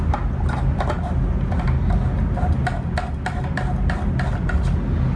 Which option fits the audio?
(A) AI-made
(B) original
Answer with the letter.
B